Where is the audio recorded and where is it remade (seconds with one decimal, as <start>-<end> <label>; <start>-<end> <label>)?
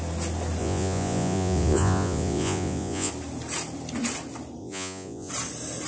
0.0-0.6 recorded; 0.6-3.1 remade; 3.1-4.6 recorded; 4.6-5.3 remade; 5.3-5.9 recorded